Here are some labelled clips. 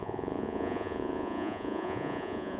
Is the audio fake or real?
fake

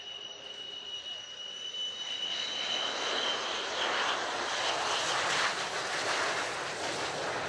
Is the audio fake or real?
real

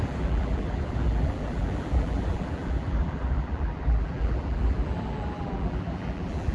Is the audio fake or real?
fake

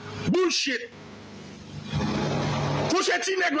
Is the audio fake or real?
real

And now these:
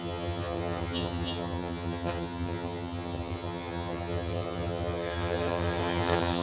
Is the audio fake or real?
fake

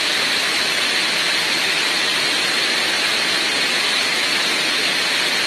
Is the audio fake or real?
real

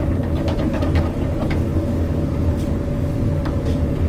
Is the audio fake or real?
fake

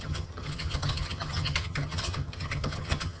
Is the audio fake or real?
fake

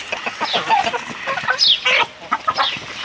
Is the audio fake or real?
real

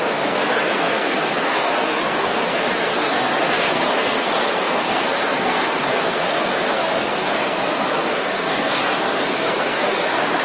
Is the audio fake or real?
fake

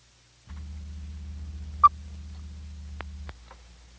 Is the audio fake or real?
real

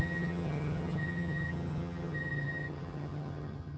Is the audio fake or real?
fake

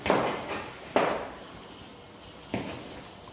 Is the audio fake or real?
real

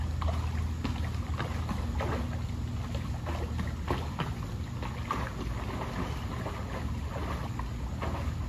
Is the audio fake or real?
real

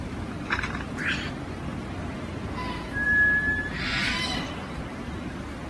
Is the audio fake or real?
real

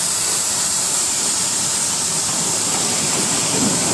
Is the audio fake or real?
fake